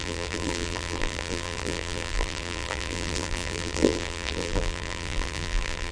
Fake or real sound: fake